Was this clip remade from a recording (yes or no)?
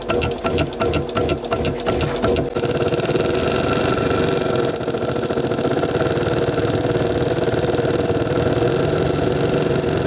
no